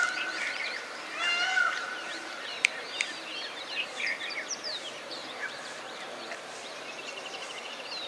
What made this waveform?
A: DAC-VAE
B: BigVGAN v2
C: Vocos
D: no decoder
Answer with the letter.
B